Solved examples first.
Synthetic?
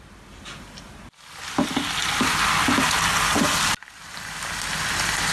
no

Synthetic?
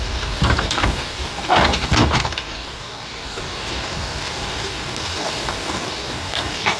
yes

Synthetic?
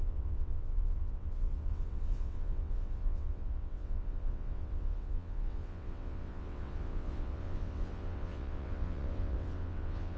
yes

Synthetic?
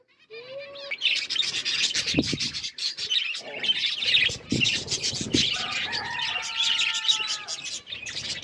no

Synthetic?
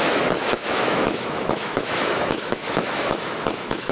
yes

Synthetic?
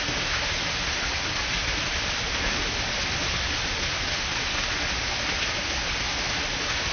no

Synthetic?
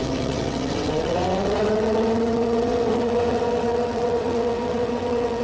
yes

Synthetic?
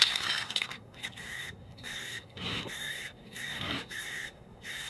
yes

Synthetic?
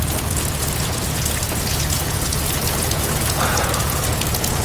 yes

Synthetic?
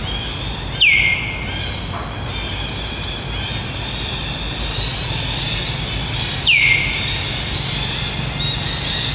no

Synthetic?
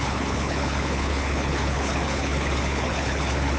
yes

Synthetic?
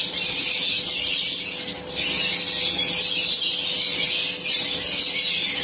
no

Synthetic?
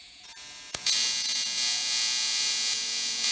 yes